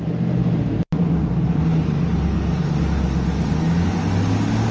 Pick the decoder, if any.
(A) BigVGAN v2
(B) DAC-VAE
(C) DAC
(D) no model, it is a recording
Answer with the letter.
D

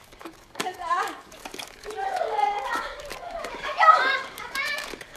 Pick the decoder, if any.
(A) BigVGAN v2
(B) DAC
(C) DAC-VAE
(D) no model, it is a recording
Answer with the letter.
B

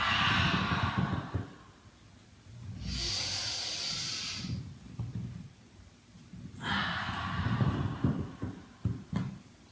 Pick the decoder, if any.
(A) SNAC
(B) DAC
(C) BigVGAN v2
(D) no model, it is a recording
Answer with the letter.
D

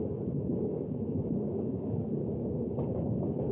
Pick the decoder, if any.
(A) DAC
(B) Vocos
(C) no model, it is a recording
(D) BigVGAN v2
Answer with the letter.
A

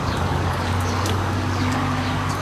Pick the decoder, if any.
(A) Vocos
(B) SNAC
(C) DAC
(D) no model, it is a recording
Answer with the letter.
C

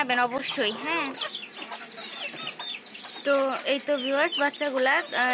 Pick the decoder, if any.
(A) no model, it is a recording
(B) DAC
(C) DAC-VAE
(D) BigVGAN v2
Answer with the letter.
A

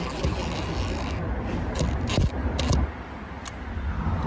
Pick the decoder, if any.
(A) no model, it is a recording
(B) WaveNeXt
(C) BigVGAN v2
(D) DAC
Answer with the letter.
A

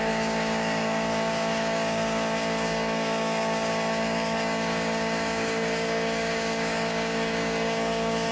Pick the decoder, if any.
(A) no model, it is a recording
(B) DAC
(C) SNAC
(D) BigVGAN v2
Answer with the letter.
B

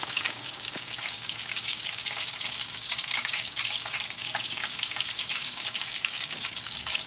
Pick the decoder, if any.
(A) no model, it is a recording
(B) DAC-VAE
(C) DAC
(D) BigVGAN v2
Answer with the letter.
C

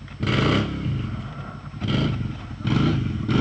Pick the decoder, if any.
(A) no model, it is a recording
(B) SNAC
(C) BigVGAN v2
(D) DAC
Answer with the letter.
A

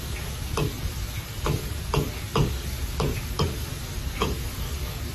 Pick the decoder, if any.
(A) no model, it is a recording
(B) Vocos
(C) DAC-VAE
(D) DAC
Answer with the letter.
D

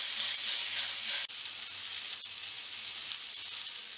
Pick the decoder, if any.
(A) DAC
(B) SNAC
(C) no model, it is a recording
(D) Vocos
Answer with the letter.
C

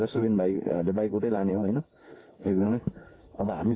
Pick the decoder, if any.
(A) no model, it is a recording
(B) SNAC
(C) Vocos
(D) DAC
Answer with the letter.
D